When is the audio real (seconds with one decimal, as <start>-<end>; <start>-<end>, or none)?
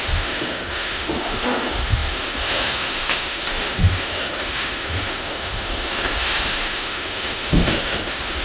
none